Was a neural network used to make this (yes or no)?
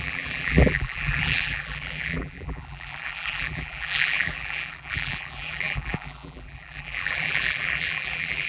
yes